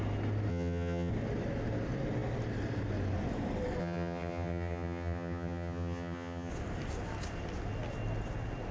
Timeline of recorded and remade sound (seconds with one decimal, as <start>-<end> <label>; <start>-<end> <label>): 0.0-0.5 recorded; 0.5-1.1 remade; 1.1-3.8 recorded; 3.8-6.5 remade; 6.5-8.7 recorded